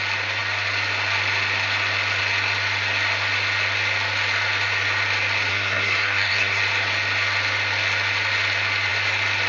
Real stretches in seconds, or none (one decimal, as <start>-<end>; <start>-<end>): 0.0-5.5; 6.6-9.5